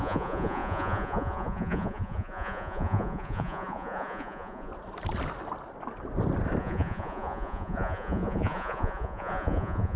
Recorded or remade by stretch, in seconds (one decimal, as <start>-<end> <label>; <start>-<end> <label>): 0.0-4.7 remade; 4.7-6.6 recorded; 6.6-10.0 remade